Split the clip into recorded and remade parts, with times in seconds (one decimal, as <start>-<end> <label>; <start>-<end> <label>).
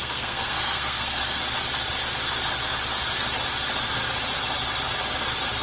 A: 0.0-1.4 remade; 1.4-5.6 recorded